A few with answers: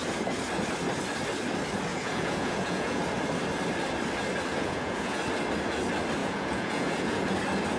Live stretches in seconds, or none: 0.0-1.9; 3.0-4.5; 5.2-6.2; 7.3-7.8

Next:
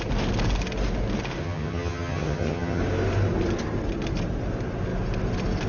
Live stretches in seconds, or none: 0.0-1.4; 2.8-5.7

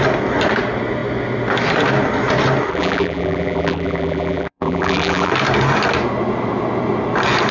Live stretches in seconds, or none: 0.0-2.7; 5.3-7.5

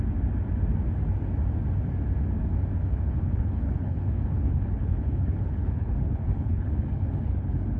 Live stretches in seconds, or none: 0.0-2.8

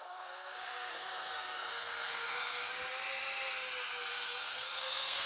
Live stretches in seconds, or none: 2.7-4.1

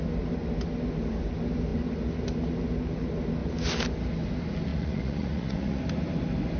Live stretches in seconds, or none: 0.0-4.7; 5.8-6.6

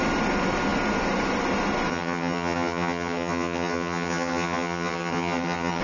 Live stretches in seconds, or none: 0.0-1.9

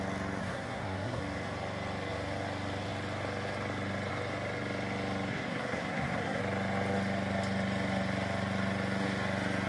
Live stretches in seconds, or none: 0.0-0.4; 1.2-5.3; 6.4-9.7